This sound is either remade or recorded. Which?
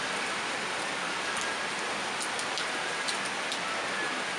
recorded